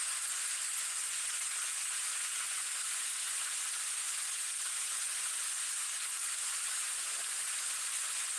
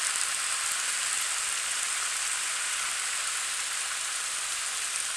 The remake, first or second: first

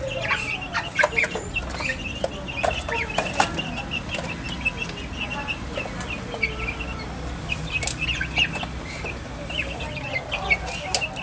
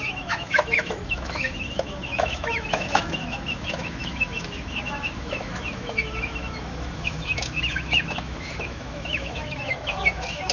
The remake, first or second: second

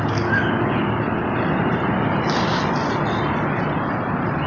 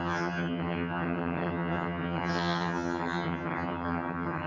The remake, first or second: second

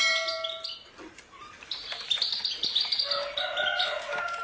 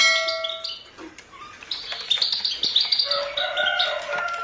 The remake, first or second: first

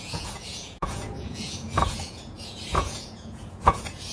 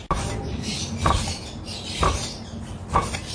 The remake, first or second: first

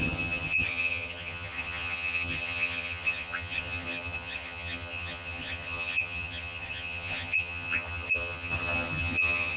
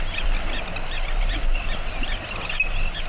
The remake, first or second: first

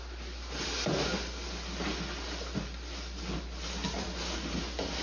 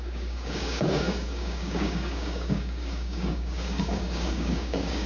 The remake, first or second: second